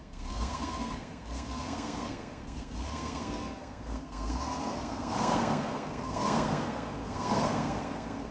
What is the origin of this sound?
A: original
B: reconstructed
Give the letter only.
B